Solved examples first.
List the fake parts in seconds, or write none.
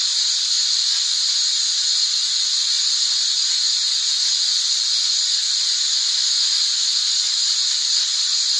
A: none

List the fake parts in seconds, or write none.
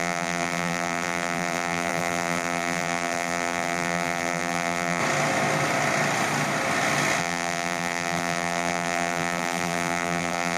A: 0.0-5.0 (vocoder, BigVGAN v2); 7.2-10.6